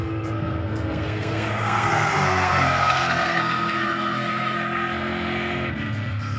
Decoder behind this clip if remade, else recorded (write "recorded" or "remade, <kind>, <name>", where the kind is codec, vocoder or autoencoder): remade, codec, SNAC